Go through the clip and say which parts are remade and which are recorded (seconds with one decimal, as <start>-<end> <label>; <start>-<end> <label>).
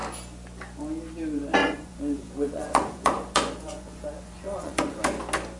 0.0-1.6 recorded; 1.6-5.0 remade; 5.0-5.6 recorded